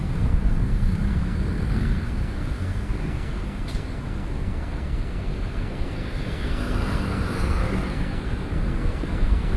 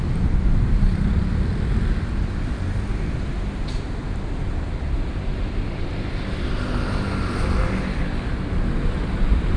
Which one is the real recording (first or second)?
second